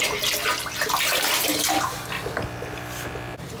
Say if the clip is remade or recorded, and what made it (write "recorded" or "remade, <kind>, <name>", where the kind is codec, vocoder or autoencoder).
recorded